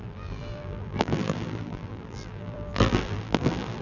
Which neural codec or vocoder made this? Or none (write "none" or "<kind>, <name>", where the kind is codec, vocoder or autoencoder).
vocoder, BigVGAN v2